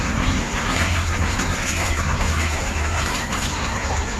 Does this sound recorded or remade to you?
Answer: remade